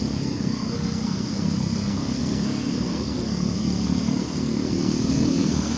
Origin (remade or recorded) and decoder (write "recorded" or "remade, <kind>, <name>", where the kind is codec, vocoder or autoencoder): remade, codec, SNAC